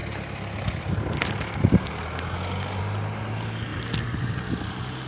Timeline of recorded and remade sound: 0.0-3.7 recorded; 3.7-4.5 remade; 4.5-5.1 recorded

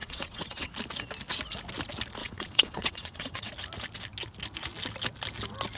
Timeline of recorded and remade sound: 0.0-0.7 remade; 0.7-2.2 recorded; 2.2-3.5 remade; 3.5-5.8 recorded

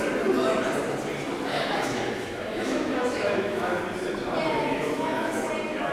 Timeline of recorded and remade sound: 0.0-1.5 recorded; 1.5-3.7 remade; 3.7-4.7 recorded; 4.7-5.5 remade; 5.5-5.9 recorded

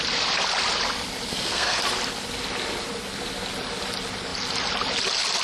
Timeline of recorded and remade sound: 0.0-1.3 recorded; 1.3-1.8 remade; 1.8-5.4 recorded

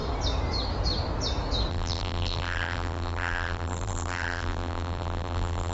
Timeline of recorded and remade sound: 0.0-1.7 recorded; 1.7-5.7 remade